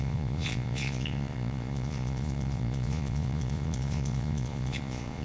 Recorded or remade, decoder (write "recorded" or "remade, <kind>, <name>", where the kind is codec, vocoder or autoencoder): remade, vocoder, Vocos